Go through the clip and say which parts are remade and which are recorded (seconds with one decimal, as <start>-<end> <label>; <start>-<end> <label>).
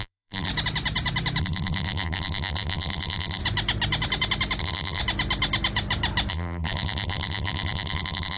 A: 0.0-0.5 remade; 0.5-1.4 recorded; 1.4-3.4 remade; 3.4-4.6 recorded; 4.6-5.0 remade; 5.0-6.3 recorded; 6.3-8.4 remade